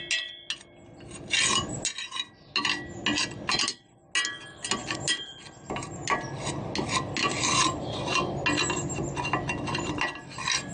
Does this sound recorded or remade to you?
recorded